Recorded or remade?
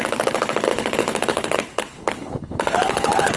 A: remade